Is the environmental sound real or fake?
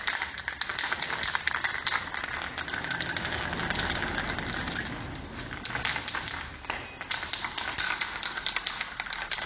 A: real